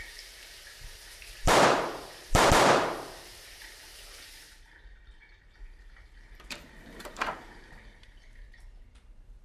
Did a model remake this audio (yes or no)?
yes